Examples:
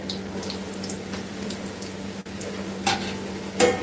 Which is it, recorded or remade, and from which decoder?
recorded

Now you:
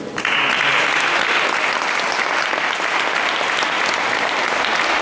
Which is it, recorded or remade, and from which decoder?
recorded